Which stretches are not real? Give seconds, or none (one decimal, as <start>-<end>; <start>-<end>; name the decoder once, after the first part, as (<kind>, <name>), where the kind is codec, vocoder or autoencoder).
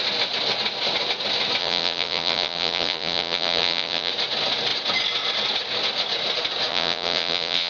1.6-4.1 (vocoder, Vocos); 6.7-7.7